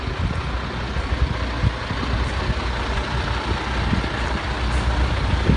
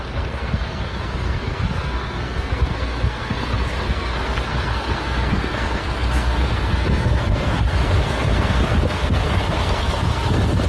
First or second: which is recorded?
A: first